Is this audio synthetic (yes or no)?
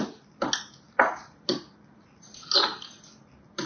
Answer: no